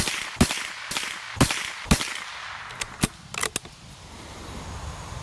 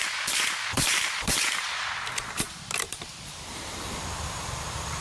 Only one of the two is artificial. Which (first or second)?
second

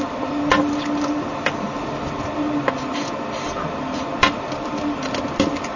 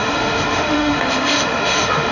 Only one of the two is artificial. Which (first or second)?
second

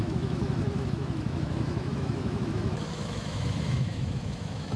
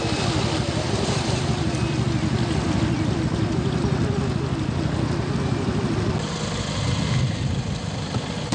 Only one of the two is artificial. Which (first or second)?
first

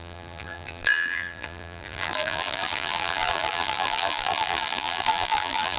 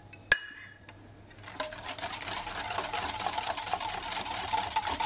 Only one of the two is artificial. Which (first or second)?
first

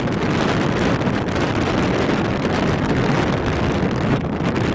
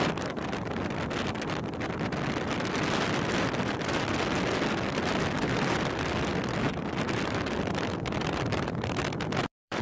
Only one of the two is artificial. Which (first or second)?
second